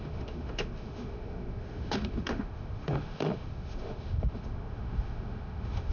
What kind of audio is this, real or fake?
fake